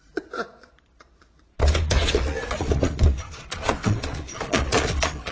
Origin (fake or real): fake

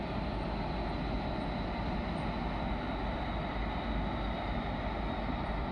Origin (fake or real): real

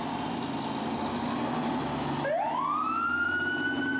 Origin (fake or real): real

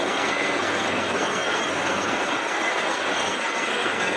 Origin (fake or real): fake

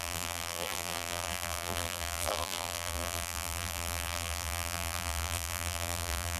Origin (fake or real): fake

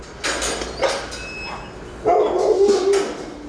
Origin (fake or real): real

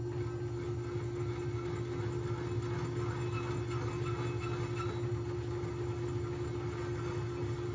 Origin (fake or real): real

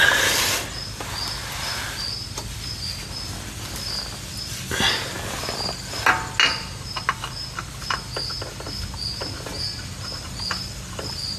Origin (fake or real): real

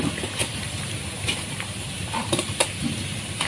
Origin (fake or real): fake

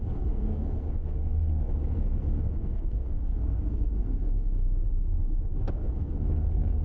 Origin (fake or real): fake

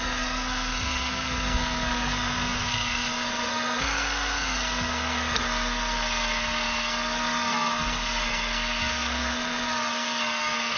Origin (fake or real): fake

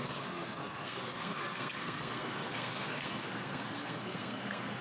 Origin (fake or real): fake